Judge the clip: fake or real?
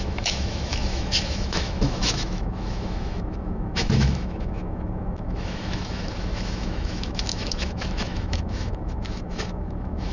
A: fake